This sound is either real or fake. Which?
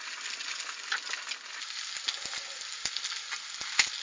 real